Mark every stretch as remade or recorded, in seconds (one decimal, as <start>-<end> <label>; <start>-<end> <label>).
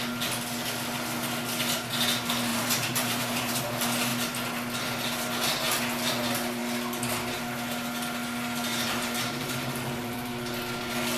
0.0-2.5 recorded; 2.5-3.6 remade; 3.6-8.7 recorded; 8.7-10.3 remade; 10.3-11.2 recorded